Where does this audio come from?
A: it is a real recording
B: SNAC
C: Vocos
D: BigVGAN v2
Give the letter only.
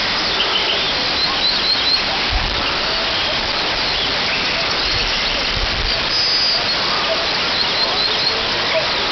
A